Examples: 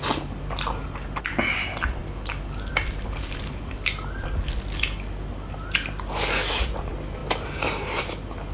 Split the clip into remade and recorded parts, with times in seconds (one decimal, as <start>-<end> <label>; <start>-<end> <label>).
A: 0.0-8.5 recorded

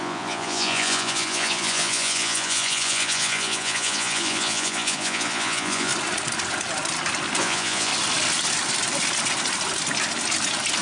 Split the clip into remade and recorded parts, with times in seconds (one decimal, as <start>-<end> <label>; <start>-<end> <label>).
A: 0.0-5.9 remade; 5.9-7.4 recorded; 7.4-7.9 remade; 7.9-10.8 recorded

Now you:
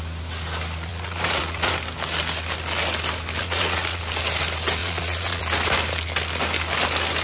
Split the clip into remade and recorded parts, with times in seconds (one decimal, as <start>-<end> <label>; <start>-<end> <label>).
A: 0.0-0.9 recorded; 0.9-1.7 remade; 1.7-3.4 recorded; 3.4-4.0 remade; 4.0-4.8 recorded; 4.8-5.4 remade; 5.4-7.2 recorded